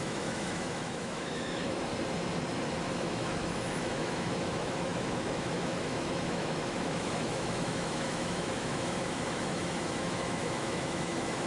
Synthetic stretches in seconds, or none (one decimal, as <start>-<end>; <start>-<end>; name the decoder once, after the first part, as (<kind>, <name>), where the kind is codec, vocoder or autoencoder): 0.0-1.9 (autoencoder, DAC-VAE); 2.9-11.5